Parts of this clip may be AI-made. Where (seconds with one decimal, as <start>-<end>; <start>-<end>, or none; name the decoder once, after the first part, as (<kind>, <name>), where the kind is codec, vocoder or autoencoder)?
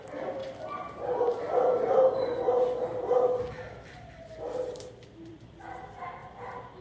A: 0.0-0.4 (vocoder, BigVGAN v2); 4.5-6.2